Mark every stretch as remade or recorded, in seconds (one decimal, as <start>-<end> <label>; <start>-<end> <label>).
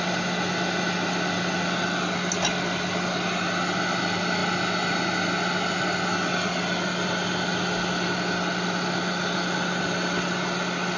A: 0.0-11.0 recorded